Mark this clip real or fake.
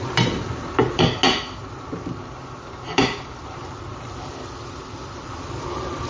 real